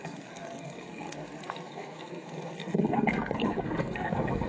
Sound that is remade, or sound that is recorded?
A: remade